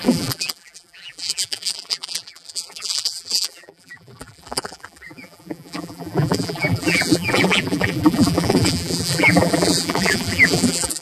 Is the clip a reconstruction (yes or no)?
yes